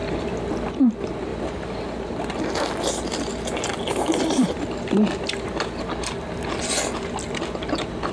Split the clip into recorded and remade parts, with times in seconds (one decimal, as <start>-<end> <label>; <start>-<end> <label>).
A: 0.0-1.3 recorded; 1.3-5.8 remade; 5.8-8.1 recorded